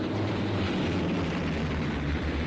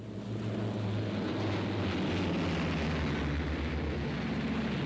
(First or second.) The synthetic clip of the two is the first